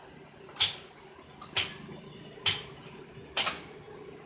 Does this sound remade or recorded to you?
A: recorded